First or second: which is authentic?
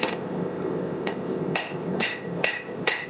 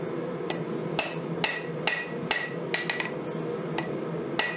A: second